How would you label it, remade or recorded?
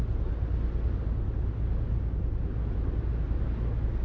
recorded